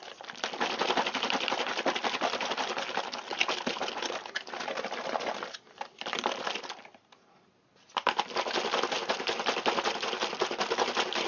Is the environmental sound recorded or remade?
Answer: recorded